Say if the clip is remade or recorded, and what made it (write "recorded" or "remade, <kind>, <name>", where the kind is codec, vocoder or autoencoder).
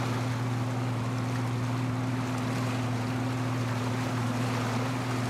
recorded